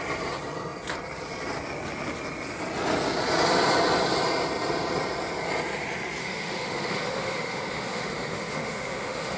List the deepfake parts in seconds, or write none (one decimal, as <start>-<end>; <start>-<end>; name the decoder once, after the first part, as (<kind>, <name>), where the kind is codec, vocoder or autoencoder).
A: 6.2-9.4 (autoencoder, DAC-VAE)